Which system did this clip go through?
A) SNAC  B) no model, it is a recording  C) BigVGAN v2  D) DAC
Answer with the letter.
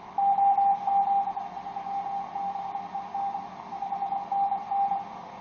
B